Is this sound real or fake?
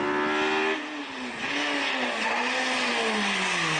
real